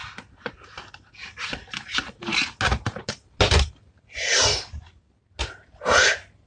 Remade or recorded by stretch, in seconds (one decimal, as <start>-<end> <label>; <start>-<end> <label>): 0.0-4.5 recorded; 4.5-5.1 remade; 5.1-6.5 recorded